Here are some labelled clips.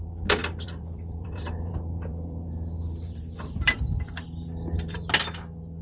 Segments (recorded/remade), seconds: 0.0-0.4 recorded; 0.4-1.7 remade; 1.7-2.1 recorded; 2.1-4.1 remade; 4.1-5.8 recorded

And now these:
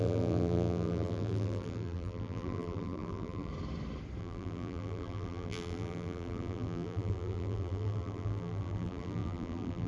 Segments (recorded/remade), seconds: 0.0-3.5 remade; 3.5-4.2 recorded; 4.2-9.9 remade

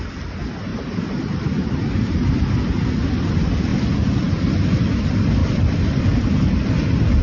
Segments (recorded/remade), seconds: 0.0-0.7 recorded; 0.7-1.9 remade; 1.9-5.4 recorded; 5.4-7.2 remade

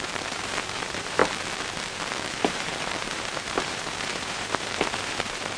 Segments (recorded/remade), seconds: 0.0-1.2 remade; 1.2-2.3 recorded; 2.3-5.6 remade